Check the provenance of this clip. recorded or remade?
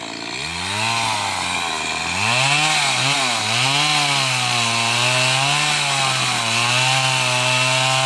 recorded